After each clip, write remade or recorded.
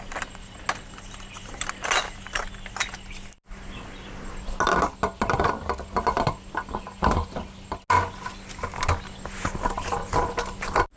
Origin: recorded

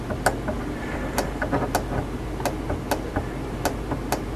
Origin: recorded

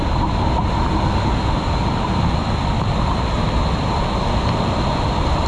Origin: recorded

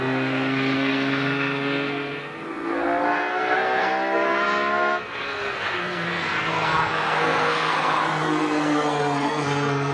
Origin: remade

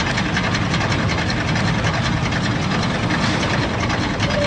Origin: recorded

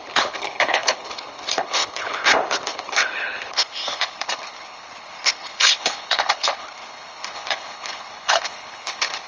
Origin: remade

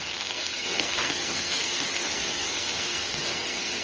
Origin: remade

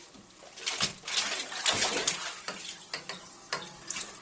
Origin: recorded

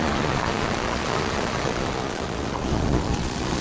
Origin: remade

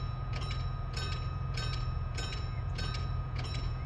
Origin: remade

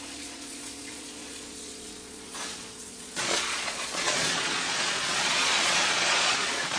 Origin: remade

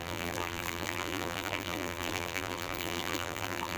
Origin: remade